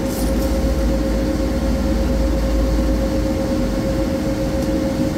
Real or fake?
real